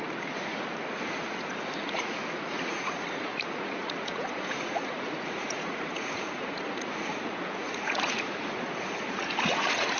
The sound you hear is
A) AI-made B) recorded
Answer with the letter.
A